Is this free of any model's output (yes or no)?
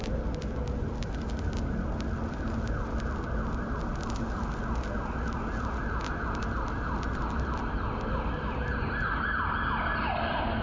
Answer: yes